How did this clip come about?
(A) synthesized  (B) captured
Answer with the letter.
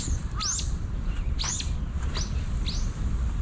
B